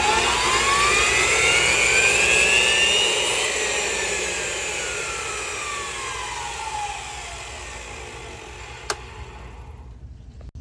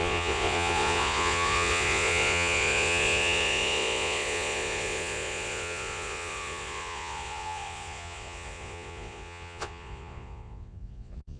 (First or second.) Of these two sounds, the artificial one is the second